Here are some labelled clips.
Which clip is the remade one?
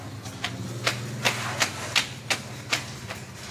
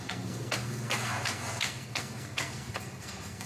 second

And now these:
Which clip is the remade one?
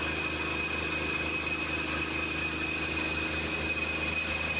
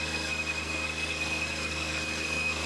second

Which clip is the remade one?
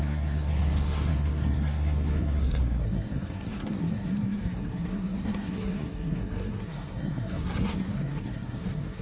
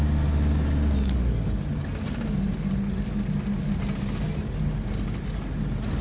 first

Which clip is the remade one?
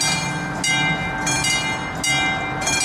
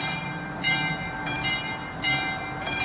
second